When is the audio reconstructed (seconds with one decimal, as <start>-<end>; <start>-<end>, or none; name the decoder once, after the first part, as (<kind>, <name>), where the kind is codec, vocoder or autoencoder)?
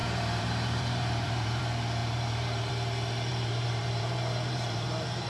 0.0-1.6 (vocoder, BigVGAN v2); 2.0-2.7; 3.3-5.3